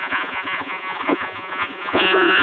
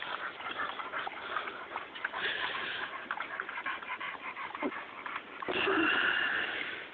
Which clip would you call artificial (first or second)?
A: first